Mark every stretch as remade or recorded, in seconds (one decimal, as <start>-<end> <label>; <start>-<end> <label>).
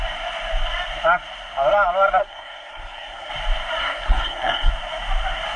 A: 0.0-2.2 recorded; 2.2-3.3 remade; 3.3-3.8 recorded; 3.8-4.7 remade; 4.7-5.6 recorded